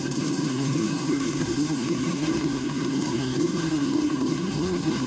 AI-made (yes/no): yes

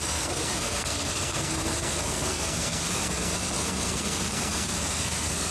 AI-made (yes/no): yes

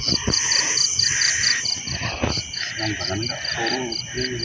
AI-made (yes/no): no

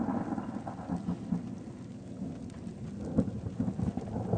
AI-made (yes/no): no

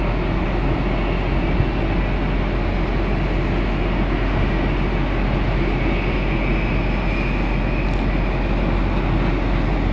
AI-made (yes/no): no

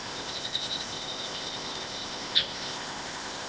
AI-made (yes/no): yes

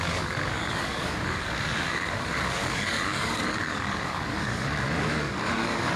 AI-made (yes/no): yes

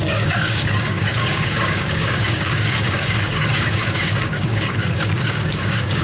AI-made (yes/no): yes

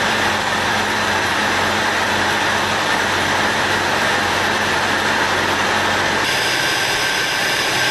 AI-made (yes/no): yes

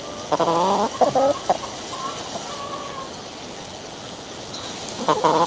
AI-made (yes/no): no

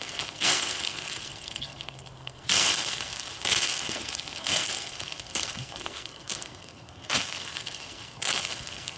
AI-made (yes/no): yes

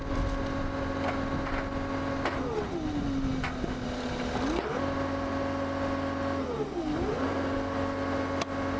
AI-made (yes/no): no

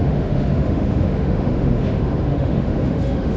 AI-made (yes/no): yes